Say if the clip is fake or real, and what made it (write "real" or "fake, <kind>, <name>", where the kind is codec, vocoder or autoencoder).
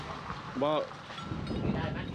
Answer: real